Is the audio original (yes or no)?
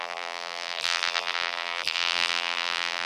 no